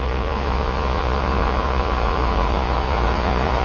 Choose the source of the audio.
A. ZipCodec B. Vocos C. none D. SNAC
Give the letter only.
B